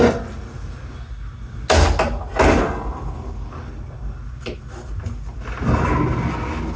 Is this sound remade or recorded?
recorded